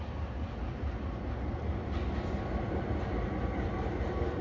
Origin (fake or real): real